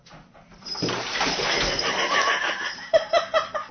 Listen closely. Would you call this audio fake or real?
fake